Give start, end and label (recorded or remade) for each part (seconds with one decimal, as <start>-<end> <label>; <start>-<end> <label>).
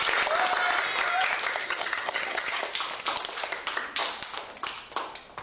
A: 0.0-1.6 recorded; 1.6-2.6 remade; 2.6-5.4 recorded